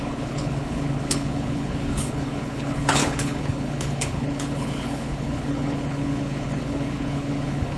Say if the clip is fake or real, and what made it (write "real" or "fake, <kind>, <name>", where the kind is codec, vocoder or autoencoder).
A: fake, codec, HILCodec